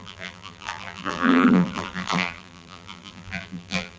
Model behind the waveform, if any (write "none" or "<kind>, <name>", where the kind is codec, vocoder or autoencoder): vocoder, BigVGAN v2